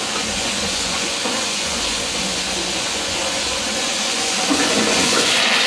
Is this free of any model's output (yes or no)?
no